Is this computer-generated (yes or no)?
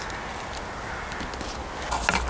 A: no